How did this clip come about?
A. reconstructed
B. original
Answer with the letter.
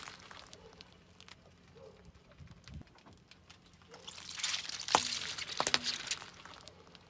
B